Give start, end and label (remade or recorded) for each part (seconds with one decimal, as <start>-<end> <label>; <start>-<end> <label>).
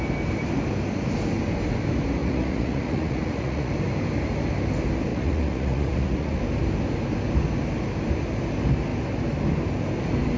0.0-2.2 recorded; 2.2-3.7 remade; 3.7-5.1 recorded; 5.1-6.4 remade; 6.4-10.4 recorded